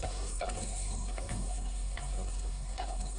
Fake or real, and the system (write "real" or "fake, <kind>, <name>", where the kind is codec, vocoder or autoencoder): fake, codec, SNAC